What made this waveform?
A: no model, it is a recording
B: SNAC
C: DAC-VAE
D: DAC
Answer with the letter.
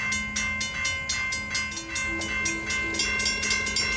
A